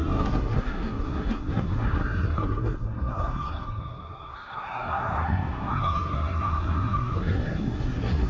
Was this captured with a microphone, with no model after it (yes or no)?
no